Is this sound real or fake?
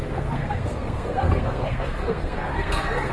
fake